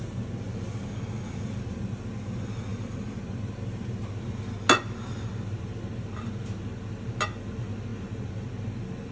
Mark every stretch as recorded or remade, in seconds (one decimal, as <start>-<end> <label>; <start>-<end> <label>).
0.0-9.1 recorded